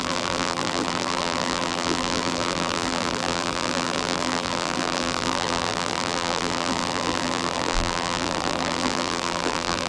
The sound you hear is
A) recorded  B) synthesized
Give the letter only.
B